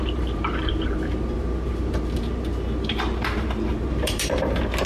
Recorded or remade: remade